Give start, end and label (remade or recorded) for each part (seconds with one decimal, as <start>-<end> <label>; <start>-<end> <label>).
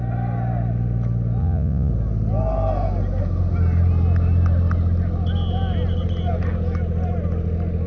0.0-1.4 recorded; 1.4-1.9 remade; 1.9-7.9 recorded